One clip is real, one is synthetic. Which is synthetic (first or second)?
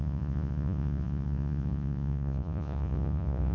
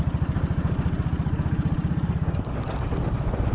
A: first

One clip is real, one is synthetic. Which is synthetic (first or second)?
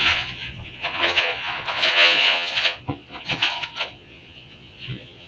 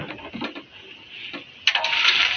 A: first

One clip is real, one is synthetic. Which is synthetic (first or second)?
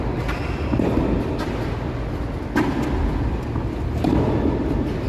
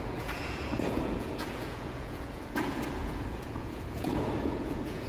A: second